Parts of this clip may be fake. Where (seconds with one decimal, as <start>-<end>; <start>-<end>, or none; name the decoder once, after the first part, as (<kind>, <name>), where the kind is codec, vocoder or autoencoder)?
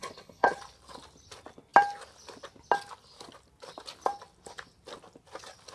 0.0-0.6 (codec, HILCodec)